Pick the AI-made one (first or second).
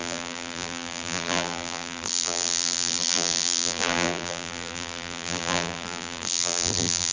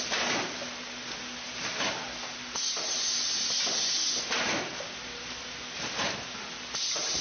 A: first